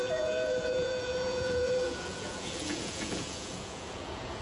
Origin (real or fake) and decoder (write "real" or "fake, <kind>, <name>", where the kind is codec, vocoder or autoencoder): fake, vocoder, Vocos